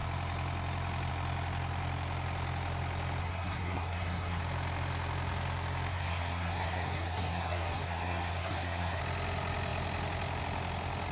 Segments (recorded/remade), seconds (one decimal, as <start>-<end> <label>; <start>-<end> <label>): 0.0-3.2 recorded; 3.2-4.4 remade; 4.4-5.9 recorded; 5.9-9.0 remade; 9.0-11.1 recorded